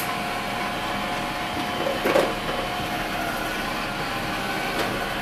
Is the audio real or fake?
real